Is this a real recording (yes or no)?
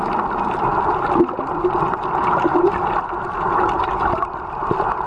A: yes